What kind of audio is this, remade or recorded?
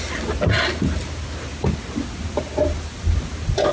recorded